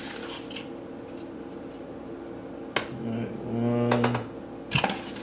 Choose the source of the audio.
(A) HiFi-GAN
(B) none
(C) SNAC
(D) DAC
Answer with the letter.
B